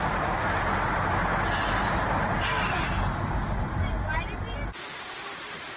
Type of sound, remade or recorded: recorded